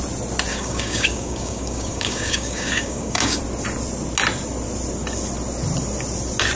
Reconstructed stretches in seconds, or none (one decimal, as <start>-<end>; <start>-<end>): 0.5-3.4